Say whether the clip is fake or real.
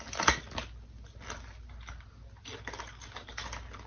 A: real